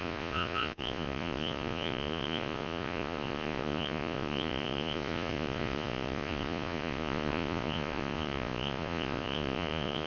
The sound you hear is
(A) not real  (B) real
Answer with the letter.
A